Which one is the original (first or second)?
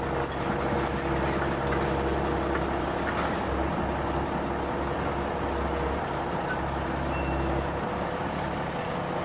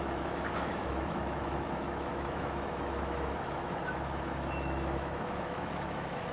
first